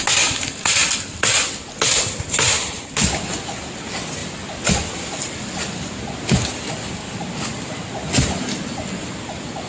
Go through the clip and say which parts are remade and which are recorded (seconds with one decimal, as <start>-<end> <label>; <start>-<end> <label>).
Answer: 0.0-9.7 recorded